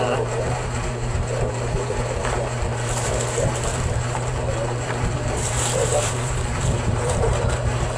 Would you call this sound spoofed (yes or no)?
yes